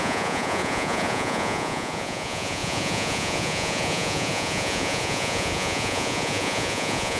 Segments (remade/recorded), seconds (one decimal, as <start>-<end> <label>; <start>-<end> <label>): 0.0-7.2 remade